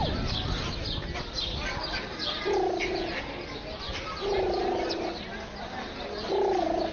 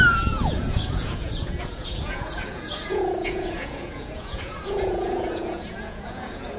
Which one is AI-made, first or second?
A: second